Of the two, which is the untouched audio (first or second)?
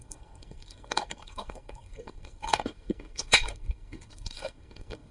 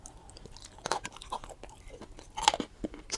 second